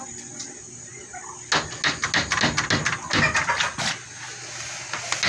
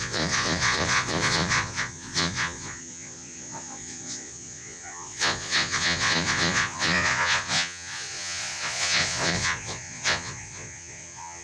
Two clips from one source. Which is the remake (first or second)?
second